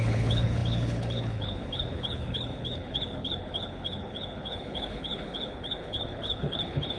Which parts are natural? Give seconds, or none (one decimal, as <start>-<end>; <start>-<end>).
none